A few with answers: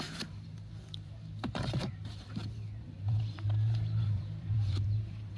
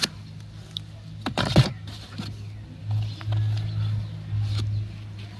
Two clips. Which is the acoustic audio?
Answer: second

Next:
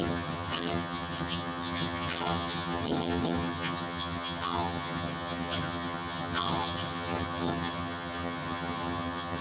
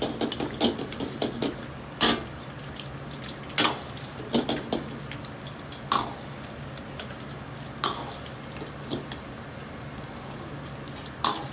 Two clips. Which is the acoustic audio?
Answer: second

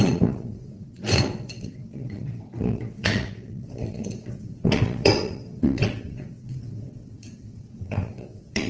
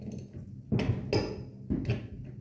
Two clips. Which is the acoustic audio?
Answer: second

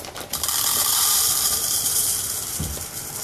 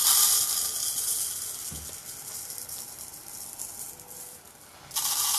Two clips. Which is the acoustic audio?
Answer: second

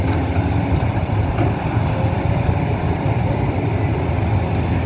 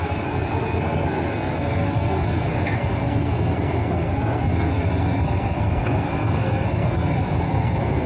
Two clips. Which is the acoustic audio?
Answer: first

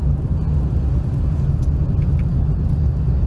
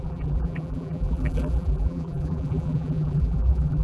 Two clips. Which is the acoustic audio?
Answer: first